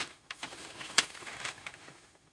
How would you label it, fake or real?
fake